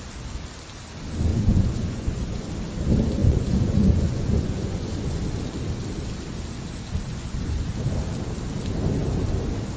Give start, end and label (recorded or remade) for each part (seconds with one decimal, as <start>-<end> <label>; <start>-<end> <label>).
0.0-1.3 recorded; 1.3-2.5 remade; 2.5-3.2 recorded; 3.2-5.2 remade; 5.2-7.1 recorded; 7.1-7.7 remade; 7.7-9.8 recorded